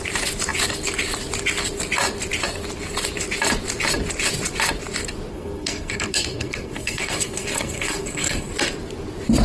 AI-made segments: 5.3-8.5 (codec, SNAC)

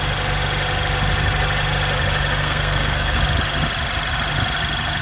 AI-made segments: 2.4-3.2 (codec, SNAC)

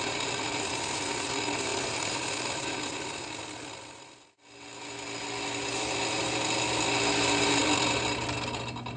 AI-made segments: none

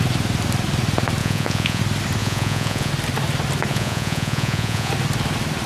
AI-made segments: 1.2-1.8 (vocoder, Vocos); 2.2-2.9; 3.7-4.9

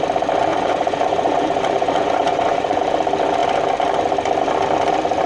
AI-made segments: 0.5-2.8 (vocoder, Vocos)